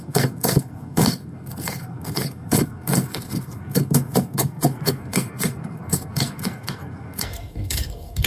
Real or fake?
fake